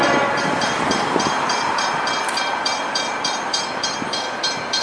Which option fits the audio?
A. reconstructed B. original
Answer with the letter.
A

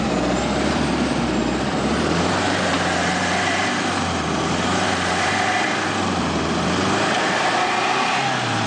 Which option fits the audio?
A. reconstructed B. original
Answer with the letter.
A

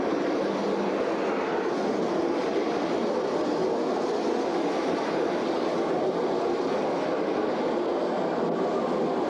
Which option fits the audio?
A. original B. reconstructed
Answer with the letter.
A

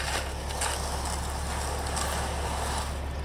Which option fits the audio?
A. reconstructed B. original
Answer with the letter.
B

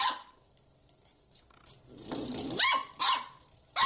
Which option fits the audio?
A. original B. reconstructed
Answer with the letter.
A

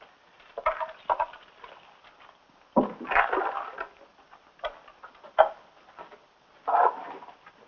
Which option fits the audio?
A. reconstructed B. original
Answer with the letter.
B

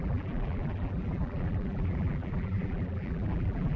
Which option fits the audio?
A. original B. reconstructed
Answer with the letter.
B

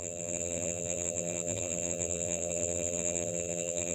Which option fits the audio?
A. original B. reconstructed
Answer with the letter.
B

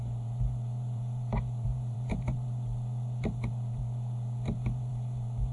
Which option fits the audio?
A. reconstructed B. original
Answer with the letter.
A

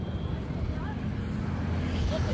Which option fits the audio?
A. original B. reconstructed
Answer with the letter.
A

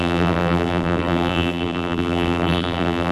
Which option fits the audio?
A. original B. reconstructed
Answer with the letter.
B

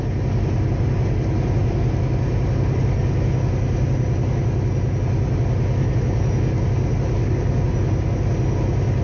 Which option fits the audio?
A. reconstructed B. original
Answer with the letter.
B